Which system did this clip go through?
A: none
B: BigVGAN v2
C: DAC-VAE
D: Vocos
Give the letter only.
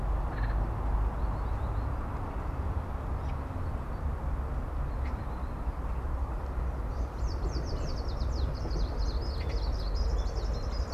A